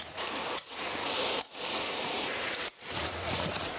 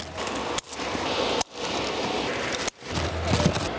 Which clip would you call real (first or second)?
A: second